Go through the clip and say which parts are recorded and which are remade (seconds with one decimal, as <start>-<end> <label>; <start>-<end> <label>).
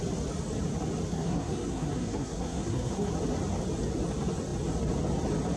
0.0-1.1 recorded; 1.1-3.1 remade; 3.1-5.6 recorded